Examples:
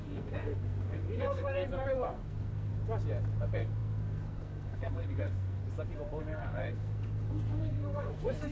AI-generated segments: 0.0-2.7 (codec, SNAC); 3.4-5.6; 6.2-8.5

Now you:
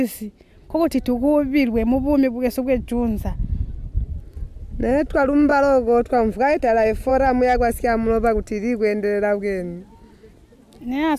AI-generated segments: none

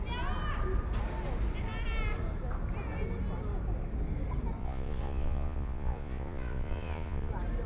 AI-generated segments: 4.6-7.3 (vocoder, Vocos)